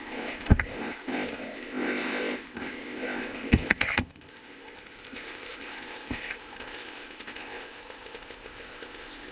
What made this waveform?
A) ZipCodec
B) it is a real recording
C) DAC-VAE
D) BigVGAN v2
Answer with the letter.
A